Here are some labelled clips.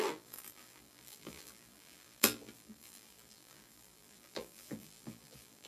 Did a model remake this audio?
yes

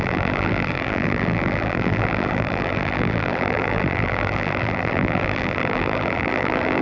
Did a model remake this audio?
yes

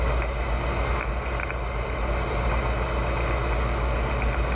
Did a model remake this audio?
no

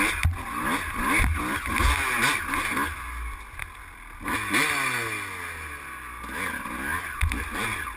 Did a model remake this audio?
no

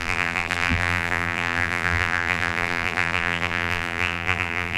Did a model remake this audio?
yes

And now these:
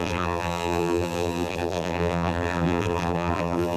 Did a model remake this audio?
yes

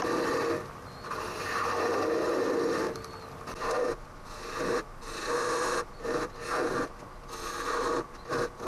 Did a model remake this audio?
no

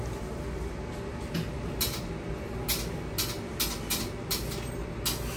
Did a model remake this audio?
no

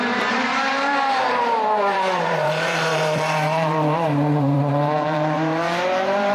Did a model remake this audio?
yes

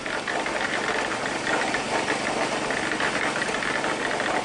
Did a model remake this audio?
no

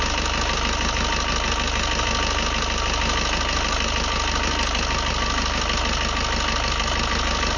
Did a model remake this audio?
no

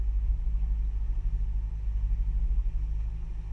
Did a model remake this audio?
no